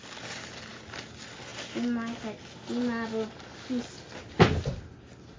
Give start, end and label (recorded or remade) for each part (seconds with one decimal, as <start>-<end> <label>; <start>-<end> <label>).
0.0-5.4 recorded